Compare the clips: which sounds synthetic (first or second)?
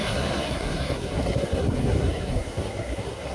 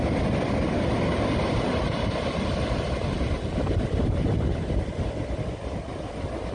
first